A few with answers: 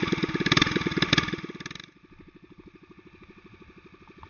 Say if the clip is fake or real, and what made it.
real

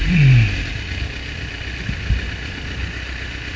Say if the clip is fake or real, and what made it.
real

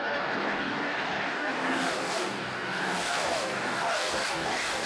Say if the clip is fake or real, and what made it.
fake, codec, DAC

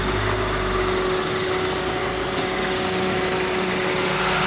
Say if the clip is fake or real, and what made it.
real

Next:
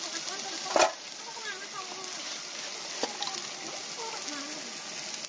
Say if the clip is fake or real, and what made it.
real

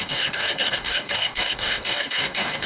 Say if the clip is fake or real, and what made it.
fake, codec, DAC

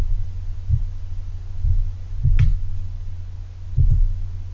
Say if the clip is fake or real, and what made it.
real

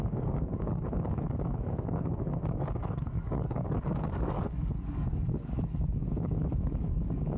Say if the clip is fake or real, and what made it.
fake, codec, DAC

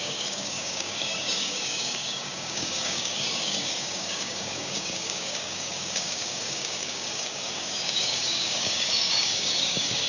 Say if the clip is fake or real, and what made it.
fake, codec, DAC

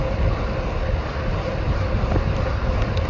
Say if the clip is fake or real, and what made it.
real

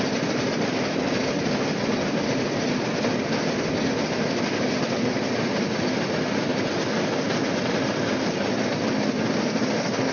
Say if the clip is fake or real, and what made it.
real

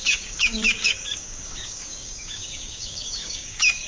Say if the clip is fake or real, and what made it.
fake, codec, DAC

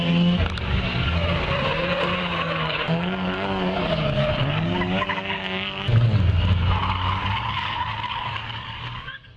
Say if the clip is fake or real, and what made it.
fake, codec, DAC